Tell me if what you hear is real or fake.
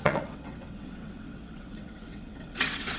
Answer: fake